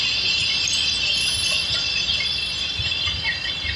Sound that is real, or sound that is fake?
real